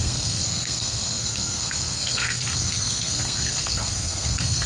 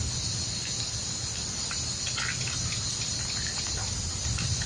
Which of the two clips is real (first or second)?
second